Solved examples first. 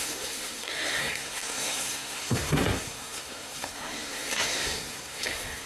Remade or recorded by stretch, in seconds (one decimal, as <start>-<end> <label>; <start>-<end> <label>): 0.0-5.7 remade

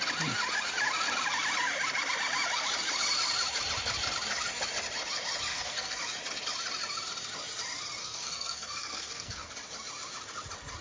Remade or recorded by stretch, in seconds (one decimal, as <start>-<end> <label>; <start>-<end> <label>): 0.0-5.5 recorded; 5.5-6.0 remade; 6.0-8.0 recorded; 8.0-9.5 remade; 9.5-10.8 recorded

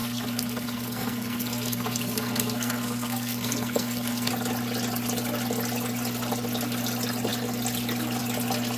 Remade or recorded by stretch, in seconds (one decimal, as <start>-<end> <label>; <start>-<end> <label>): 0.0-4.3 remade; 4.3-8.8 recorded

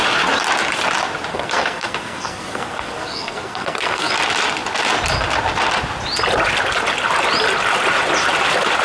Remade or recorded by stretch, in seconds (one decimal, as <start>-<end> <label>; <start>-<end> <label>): 0.0-1.3 recorded; 1.3-4.1 remade; 4.1-8.8 recorded